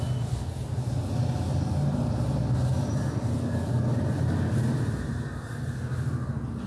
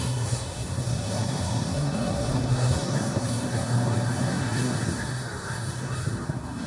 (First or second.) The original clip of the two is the first